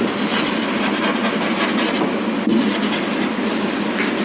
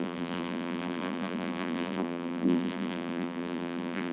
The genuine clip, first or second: first